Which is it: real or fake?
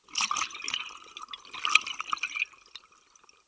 real